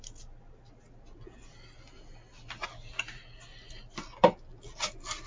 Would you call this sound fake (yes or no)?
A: no